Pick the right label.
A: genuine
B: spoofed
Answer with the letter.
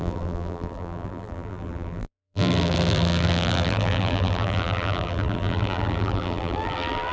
B